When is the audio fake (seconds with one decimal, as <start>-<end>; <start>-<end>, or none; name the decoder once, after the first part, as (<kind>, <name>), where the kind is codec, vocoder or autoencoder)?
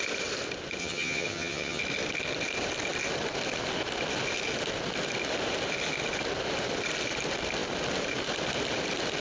0.8-1.8 (vocoder, HiFi-GAN)